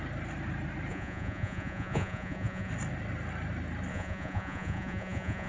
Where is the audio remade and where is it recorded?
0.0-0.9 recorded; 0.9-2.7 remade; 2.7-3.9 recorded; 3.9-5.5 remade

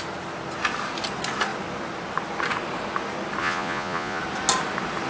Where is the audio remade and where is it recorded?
0.0-3.4 recorded; 3.4-4.2 remade; 4.2-5.1 recorded

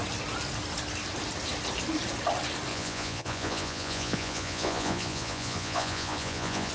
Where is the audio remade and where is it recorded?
0.0-2.7 recorded; 2.7-6.7 remade

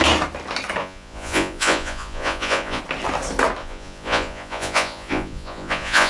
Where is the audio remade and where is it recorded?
0.0-0.8 recorded; 0.8-2.8 remade; 2.8-3.6 recorded; 3.6-6.1 remade